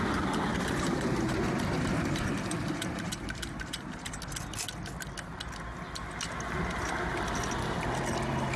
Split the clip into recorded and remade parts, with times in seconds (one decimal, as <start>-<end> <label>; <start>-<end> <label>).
0.0-0.5 recorded; 0.5-4.2 remade; 4.2-8.6 recorded